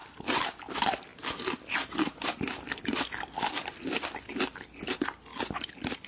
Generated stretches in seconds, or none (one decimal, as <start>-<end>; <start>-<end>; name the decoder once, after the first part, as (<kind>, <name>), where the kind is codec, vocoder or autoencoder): 0.0-0.6 (vocoder, BigVGAN v2); 1.1-4.8; 5.3-6.1